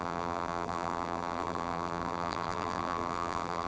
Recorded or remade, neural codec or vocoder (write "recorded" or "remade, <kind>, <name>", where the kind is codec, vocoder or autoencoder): remade, vocoder, BigVGAN v2